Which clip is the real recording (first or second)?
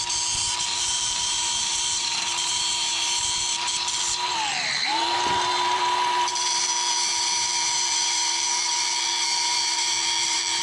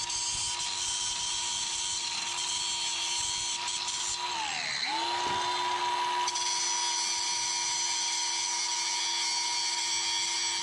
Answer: second